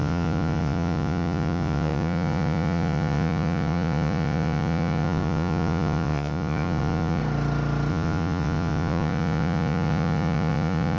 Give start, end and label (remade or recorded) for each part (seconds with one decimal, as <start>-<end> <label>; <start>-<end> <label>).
0.0-7.2 remade; 7.2-7.9 recorded; 7.9-11.0 remade